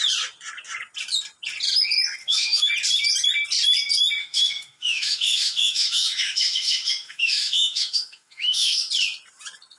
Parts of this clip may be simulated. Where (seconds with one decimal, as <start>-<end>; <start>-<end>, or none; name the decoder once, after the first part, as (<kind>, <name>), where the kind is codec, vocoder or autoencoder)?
2.2-2.7 (autoencoder, DAC-VAE); 4.2-8.9